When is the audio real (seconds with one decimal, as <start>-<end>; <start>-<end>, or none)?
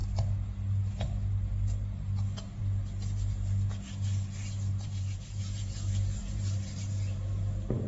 0.0-4.7; 6.6-7.9